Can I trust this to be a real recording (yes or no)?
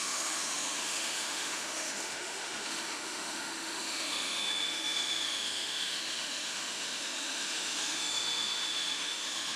no